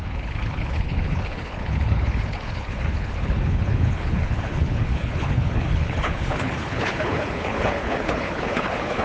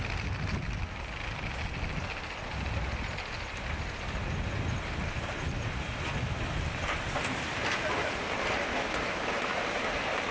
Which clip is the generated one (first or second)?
first